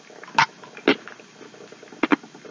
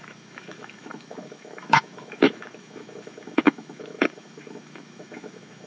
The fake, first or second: second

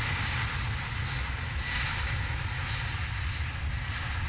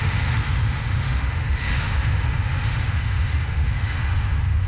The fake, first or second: second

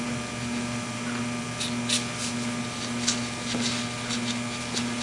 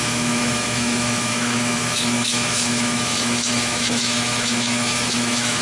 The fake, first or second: second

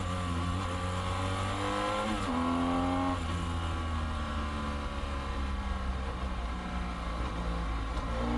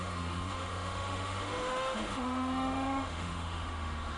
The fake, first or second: second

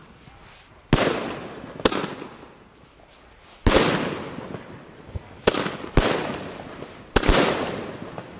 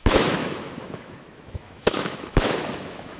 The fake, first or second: second